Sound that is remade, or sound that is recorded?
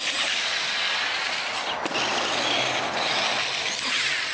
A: recorded